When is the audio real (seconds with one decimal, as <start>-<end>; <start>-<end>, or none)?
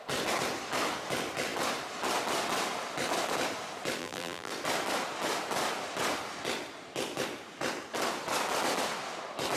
0.0-4.0; 4.5-9.6